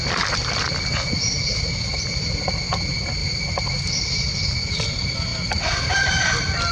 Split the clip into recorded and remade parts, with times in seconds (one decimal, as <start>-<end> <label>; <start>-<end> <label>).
0.0-6.7 recorded